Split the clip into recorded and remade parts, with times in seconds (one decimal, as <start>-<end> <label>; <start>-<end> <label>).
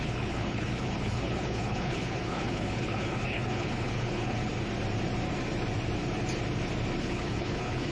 0.0-4.5 remade; 4.5-7.0 recorded; 7.0-7.9 remade